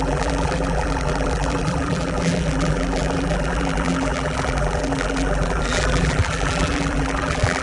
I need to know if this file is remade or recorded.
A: remade